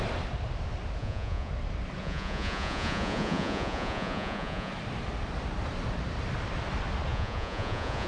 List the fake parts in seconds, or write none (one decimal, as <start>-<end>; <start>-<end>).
1.0-1.5; 2.0-4.7; 7.1-8.1